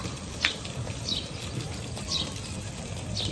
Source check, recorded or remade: recorded